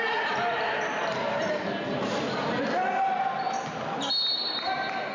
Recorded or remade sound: recorded